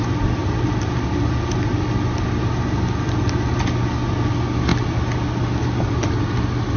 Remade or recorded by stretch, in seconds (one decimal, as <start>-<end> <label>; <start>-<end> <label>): 0.0-6.8 recorded